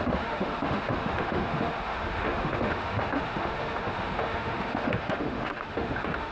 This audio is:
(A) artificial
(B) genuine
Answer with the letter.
A